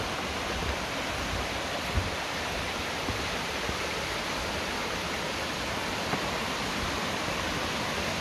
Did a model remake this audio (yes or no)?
no